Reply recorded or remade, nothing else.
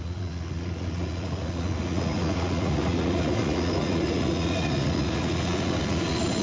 remade